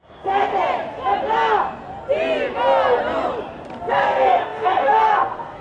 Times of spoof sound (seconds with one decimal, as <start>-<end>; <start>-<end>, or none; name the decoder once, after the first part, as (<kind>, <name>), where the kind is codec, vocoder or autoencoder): 0.0-0.5 (codec, SNAC); 3.9-5.6